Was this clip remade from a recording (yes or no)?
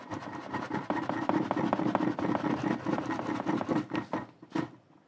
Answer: no